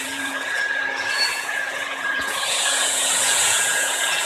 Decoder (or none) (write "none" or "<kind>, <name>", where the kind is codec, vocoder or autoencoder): vocoder, Vocos